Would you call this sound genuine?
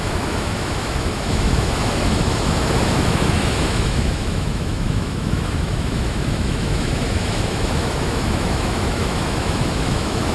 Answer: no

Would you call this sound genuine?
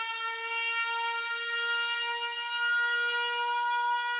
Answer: yes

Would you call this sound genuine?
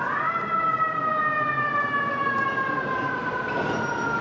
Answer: yes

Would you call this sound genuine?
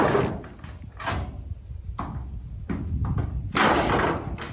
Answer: yes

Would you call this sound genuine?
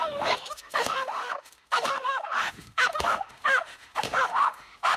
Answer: no